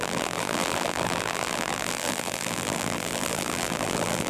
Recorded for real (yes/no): no